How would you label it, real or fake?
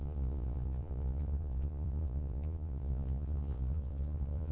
fake